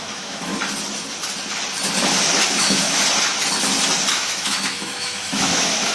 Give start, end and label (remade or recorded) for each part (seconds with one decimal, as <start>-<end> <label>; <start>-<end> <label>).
0.0-0.5 remade; 0.5-2.5 recorded; 2.5-3.0 remade; 3.0-4.1 recorded; 4.1-5.9 remade